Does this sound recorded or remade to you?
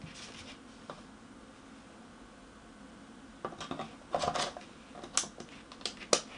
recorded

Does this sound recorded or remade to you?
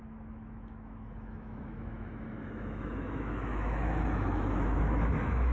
remade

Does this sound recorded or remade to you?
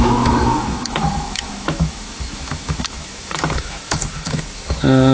remade